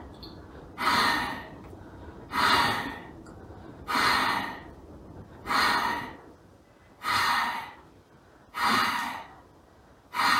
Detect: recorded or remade recorded